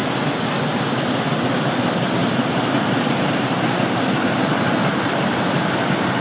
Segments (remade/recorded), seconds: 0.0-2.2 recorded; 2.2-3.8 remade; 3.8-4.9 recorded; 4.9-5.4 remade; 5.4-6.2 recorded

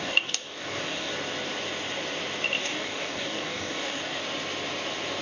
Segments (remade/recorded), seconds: 0.0-1.1 remade; 1.1-2.6 recorded; 2.6-4.2 remade; 4.2-5.2 recorded

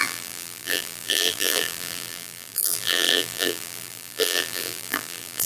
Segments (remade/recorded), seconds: 0.0-5.5 remade

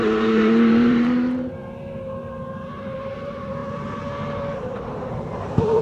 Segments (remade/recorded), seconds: 0.0-1.6 remade; 1.6-2.5 recorded; 2.5-5.8 remade

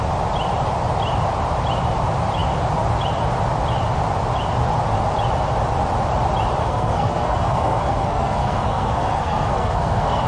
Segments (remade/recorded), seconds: 0.0-6.6 recorded; 6.6-10.3 remade

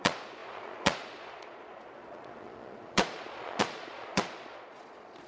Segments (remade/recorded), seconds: 0.0-5.3 remade

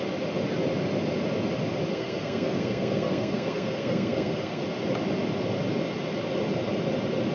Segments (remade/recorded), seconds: 0.0-1.9 recorded; 1.9-4.6 remade; 4.6-7.3 recorded